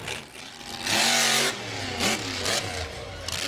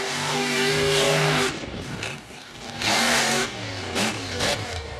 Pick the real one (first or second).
first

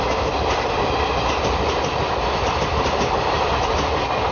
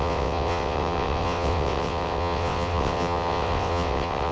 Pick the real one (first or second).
first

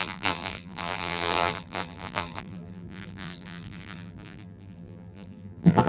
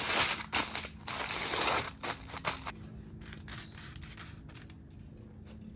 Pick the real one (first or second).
second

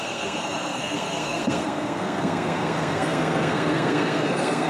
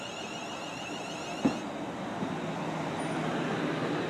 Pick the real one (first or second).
second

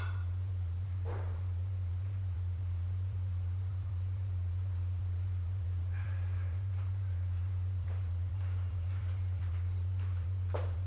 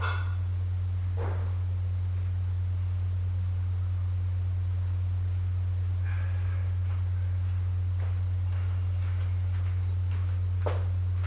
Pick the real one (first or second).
second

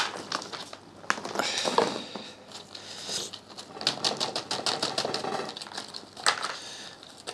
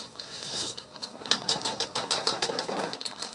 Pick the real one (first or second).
first